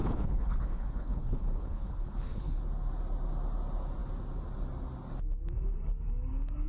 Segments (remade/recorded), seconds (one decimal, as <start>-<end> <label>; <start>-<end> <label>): 0.0-2.6 remade; 2.6-6.7 recorded